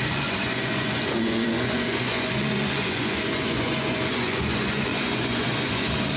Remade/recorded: remade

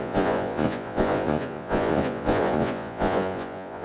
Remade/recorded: remade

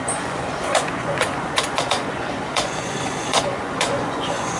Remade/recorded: remade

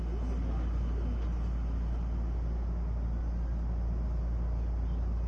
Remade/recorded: recorded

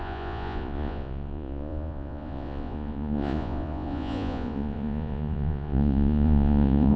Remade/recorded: remade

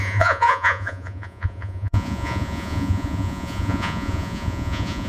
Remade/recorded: remade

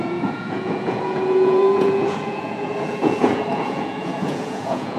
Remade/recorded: remade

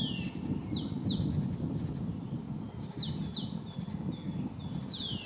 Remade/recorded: recorded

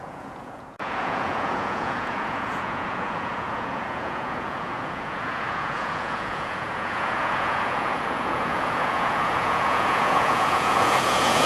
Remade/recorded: remade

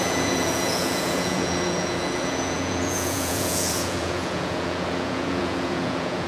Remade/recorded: remade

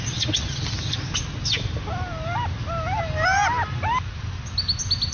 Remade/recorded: recorded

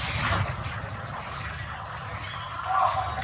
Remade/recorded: recorded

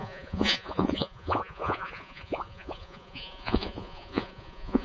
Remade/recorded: remade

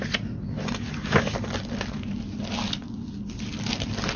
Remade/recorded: recorded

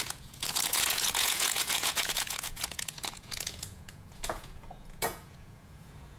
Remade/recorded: remade